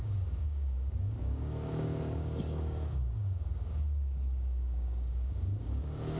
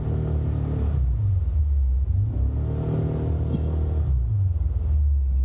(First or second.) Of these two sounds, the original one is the second